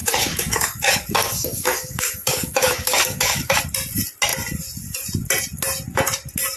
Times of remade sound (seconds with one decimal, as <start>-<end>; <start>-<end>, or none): 0.0-3.6